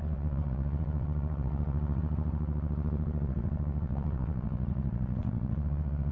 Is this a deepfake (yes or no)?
yes